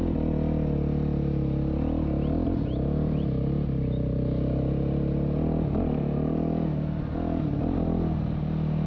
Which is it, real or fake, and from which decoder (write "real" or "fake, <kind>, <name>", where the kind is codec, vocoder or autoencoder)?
real